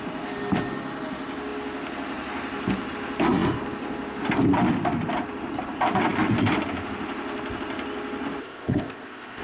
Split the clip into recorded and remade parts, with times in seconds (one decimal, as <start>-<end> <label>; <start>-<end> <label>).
0.0-8.4 recorded; 8.4-9.4 remade